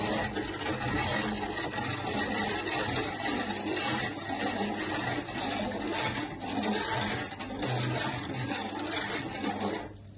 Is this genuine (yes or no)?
yes